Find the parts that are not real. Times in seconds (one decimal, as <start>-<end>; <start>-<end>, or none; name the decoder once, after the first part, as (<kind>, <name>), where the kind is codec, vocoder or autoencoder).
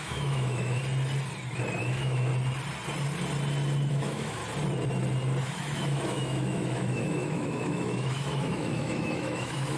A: 0.0-0.8 (autoencoder, DAC-VAE); 1.8-2.3; 3.9-4.4; 5.4-9.8